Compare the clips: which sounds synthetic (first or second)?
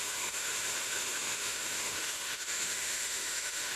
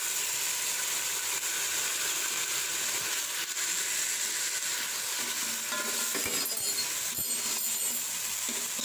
first